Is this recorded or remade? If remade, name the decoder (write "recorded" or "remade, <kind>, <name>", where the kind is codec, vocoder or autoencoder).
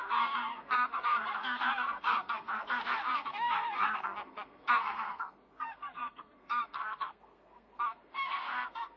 remade, codec, SNAC